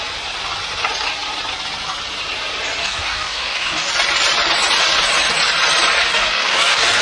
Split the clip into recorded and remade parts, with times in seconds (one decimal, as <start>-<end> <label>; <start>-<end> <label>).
0.0-2.8 recorded; 2.8-3.9 remade; 3.9-6.1 recorded; 6.1-7.0 remade